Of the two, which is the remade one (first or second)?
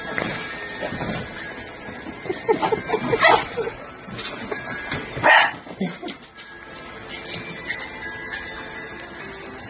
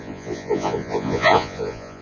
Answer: second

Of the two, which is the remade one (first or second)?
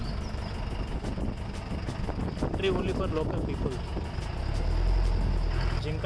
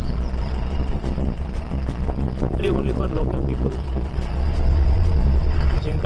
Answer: second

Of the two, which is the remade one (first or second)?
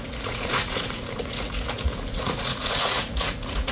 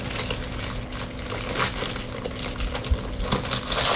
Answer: first